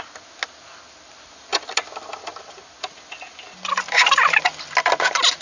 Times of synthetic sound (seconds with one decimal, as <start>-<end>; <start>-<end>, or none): none